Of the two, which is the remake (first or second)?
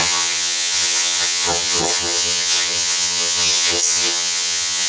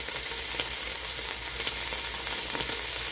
first